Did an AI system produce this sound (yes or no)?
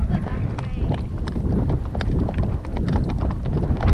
no